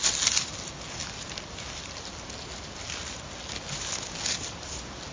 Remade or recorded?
recorded